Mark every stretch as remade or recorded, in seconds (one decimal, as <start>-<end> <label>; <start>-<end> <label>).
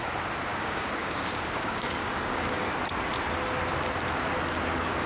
0.0-0.5 recorded; 0.5-2.7 remade; 2.7-5.1 recorded